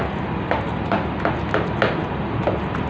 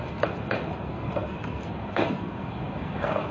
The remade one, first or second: second